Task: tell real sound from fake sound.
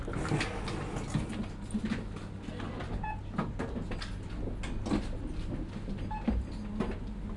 real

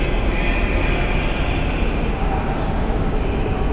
real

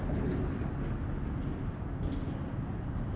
real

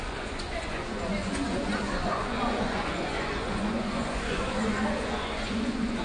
fake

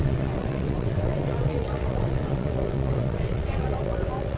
fake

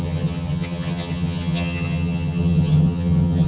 fake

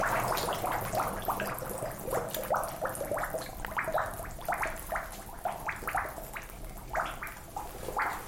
real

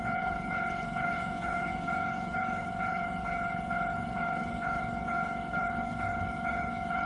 fake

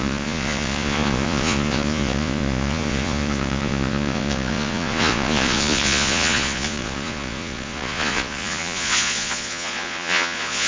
fake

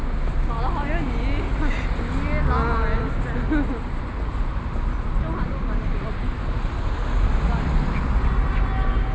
real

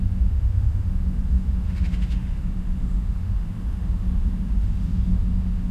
fake